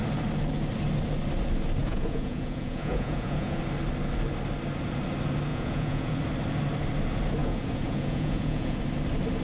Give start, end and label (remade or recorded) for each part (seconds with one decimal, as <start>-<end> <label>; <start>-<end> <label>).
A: 0.0-1.8 recorded; 1.8-3.6 remade; 3.6-5.5 recorded; 5.5-6.2 remade; 6.2-7.4 recorded; 7.4-8.8 remade; 8.8-9.4 recorded